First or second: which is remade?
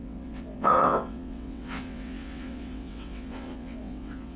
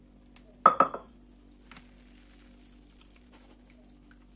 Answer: first